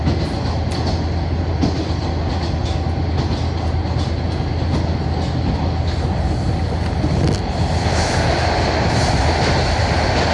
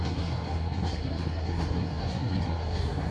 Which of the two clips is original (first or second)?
first